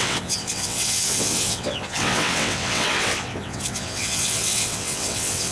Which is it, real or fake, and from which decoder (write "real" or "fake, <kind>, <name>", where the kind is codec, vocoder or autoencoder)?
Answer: fake, vocoder, WaveNeXt